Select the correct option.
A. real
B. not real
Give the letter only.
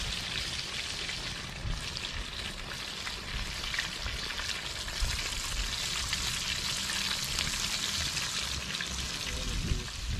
A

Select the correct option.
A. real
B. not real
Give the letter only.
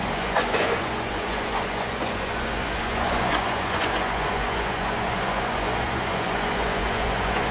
B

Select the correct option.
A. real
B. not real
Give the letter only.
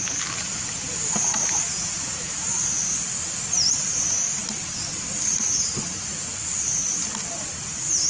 A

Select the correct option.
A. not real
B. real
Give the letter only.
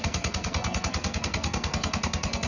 A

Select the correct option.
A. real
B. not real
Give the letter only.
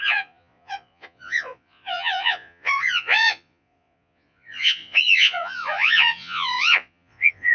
B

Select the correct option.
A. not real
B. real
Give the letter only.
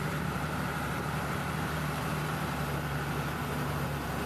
A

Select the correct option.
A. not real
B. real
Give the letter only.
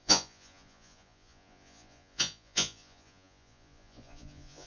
A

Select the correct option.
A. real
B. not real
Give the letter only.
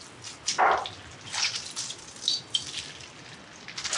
A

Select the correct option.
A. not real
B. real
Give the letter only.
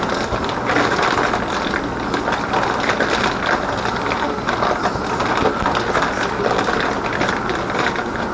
B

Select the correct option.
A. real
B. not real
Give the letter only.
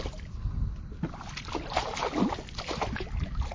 A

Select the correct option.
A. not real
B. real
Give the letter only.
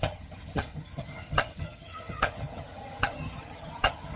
A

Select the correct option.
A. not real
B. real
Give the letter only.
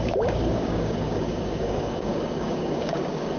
A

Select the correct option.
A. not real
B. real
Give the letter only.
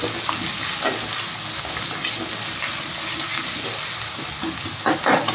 B